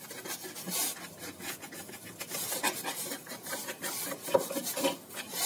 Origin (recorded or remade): recorded